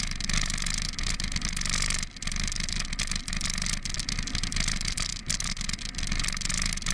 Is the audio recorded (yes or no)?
yes